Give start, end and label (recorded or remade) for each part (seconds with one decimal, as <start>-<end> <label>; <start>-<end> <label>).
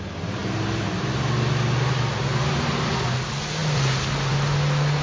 0.0-5.0 recorded